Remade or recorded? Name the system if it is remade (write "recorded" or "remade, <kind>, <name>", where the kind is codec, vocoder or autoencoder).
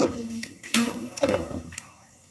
remade, codec, SNAC